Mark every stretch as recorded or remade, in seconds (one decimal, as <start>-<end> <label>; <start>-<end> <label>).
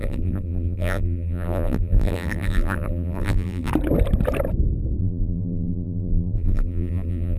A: 0.0-3.7 remade; 3.7-5.0 recorded; 5.0-7.4 remade